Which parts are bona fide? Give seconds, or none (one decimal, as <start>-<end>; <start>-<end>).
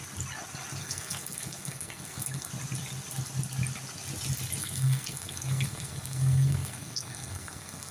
0.0-0.8; 2.5-4.6